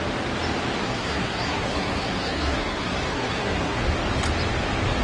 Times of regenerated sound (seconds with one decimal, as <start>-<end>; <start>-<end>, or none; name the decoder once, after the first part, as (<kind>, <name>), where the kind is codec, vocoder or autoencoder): 0.8-3.8 (codec, SNAC)